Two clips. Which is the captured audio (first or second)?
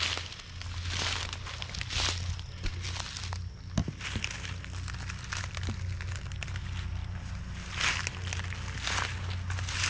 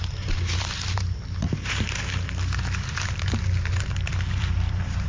first